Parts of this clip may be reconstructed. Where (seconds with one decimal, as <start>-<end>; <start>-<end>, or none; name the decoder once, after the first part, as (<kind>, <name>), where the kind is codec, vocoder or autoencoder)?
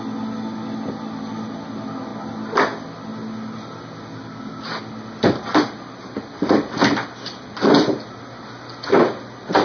none